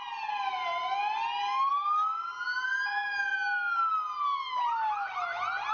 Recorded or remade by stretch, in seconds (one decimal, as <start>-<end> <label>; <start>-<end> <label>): 0.0-5.7 recorded